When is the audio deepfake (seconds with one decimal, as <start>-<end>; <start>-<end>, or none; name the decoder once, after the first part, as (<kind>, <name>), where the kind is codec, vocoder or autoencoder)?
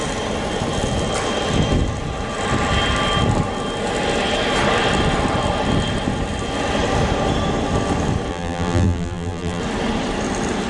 8.3-9.6 (vocoder, BigVGAN v2)